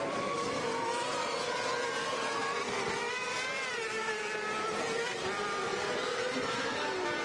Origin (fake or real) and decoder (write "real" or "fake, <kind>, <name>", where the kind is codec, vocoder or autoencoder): fake, vocoder, BigVGAN v2